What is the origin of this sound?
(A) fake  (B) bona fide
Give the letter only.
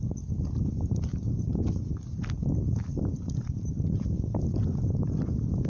B